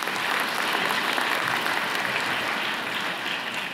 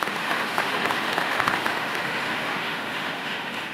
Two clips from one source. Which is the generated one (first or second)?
second